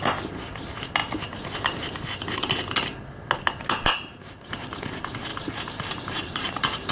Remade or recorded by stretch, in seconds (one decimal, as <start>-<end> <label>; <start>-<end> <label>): 0.0-3.9 recorded; 3.9-4.5 remade; 4.5-5.3 recorded; 5.3-6.9 remade